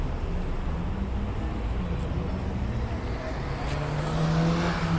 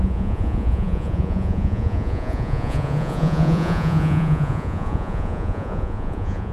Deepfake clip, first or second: second